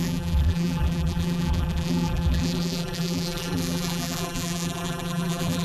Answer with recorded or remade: remade